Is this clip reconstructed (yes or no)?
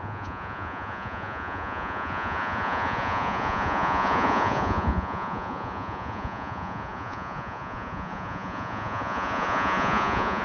yes